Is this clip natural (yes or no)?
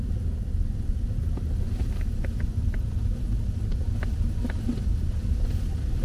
yes